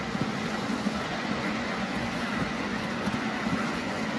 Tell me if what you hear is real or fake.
fake